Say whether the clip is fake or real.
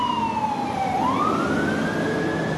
real